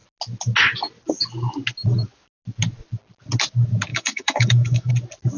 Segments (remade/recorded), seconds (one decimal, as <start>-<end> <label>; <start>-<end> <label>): 0.0-3.9 recorded; 3.9-4.9 remade; 4.9-5.4 recorded